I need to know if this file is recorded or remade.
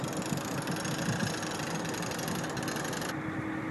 recorded